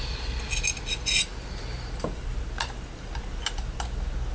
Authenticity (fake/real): real